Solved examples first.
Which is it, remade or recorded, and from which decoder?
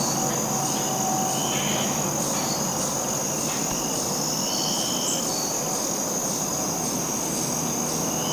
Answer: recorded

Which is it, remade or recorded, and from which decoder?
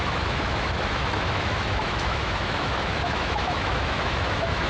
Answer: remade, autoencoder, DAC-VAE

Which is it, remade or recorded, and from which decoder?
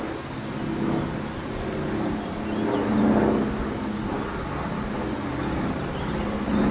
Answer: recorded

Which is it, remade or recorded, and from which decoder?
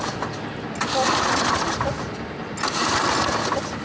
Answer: recorded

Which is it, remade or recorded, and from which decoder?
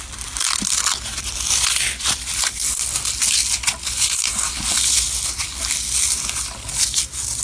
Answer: recorded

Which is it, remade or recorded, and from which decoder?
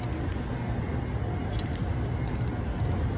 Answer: recorded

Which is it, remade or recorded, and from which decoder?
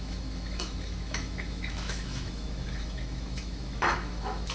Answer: remade, autoencoder, DAC-VAE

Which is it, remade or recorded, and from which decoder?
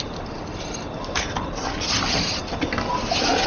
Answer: recorded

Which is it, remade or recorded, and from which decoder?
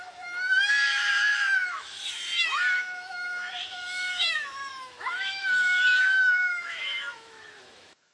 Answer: remade, autoencoder, DAC-VAE